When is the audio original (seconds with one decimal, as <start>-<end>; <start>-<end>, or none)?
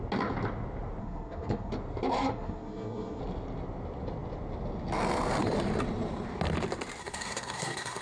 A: 0.0-1.0; 1.7-2.3; 3.2-7.0